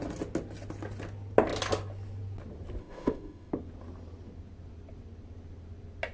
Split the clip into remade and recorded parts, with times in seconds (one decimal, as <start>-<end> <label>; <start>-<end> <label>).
0.0-2.8 recorded; 2.8-3.5 remade; 3.5-6.1 recorded